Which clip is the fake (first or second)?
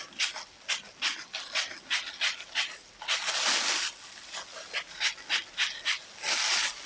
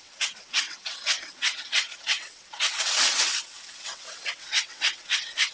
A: second